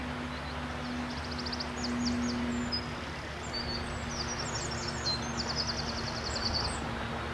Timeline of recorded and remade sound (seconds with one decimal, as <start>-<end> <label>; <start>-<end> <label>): 0.0-7.3 recorded